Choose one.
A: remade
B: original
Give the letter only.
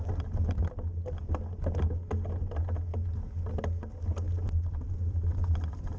B